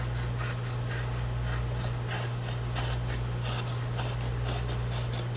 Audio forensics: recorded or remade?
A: recorded